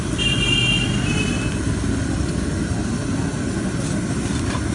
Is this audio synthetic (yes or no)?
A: no